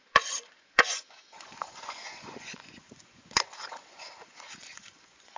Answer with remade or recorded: remade